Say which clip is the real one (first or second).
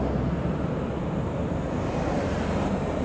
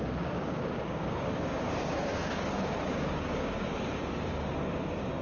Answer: first